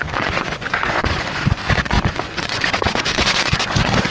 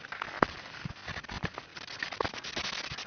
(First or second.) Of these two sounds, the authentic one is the second